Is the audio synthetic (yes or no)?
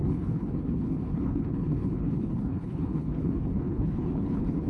yes